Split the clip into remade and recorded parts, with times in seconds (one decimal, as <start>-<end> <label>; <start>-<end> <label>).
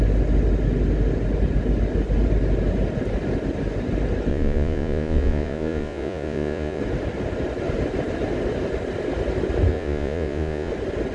0.0-4.3 recorded; 4.3-6.8 remade; 6.8-9.7 recorded; 9.7-10.7 remade; 10.7-11.1 recorded